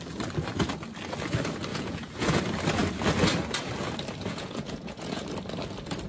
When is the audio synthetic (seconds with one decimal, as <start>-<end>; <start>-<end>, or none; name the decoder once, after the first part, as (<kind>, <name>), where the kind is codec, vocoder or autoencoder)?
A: 1.7-2.4 (vocoder, Vocos); 4.3-5.2